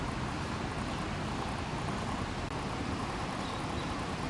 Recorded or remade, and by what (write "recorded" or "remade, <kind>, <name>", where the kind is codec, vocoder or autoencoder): recorded